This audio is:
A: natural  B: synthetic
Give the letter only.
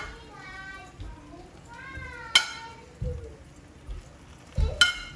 A